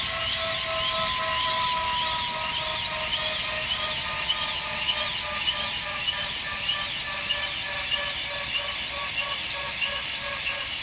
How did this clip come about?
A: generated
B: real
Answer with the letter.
B